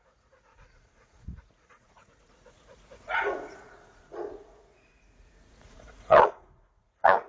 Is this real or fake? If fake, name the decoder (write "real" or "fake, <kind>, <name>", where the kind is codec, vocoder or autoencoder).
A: fake, vocoder, Vocos